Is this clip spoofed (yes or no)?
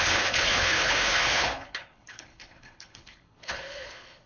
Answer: yes